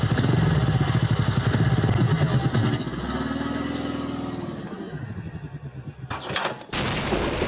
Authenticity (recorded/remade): recorded